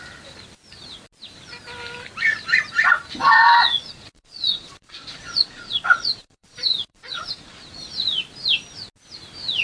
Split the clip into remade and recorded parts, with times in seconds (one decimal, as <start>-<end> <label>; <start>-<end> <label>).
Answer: 0.0-3.2 recorded; 3.2-7.9 remade; 7.9-9.6 recorded